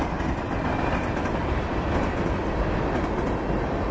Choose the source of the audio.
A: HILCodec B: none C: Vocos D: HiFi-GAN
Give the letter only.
B